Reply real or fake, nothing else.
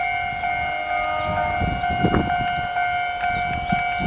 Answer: real